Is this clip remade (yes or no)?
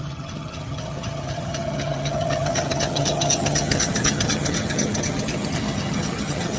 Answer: yes